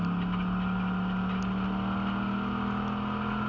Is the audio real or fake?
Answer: real